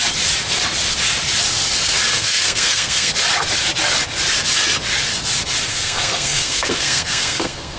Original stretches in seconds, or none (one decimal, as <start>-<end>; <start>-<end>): 0.0-2.1; 3.1-5.7